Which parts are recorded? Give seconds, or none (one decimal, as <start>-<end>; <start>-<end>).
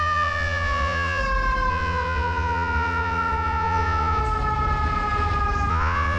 1.2-1.7; 4.2-5.7